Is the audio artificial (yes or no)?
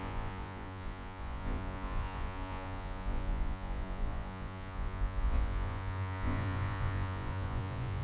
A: yes